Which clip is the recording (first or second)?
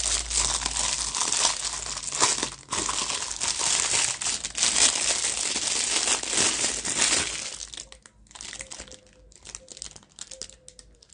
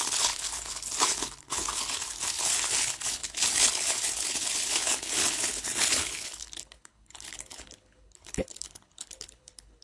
first